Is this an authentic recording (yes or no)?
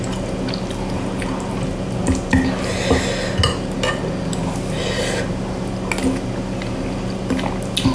yes